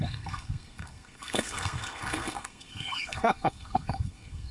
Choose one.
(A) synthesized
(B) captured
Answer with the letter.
A